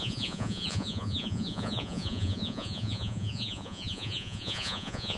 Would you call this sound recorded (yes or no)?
no